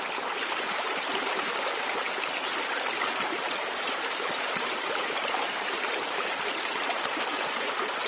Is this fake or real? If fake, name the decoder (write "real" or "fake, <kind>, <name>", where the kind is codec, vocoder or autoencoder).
fake, vocoder, BigVGAN v2